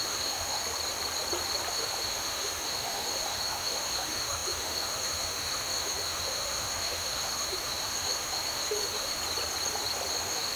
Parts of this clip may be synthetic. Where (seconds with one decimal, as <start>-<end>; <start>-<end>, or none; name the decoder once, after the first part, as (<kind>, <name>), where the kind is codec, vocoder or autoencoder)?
0.0-0.6 (autoencoder, DAC-VAE); 1.7-9.2; 10.1-10.6